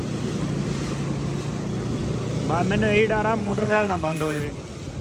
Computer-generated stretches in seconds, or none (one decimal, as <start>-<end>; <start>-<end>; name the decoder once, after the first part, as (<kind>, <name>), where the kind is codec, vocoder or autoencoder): 3.4-4.4 (autoencoder, DAC-VAE)